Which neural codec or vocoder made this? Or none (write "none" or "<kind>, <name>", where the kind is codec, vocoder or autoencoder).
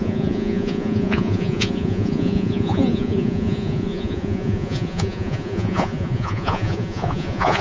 vocoder, Vocos